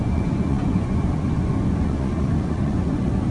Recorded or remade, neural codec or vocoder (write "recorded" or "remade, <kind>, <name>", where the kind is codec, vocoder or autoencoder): remade, vocoder, Vocos